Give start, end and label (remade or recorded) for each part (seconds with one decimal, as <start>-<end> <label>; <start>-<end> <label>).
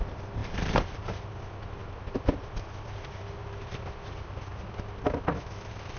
0.0-0.4 recorded; 0.4-1.2 remade; 1.2-6.0 recorded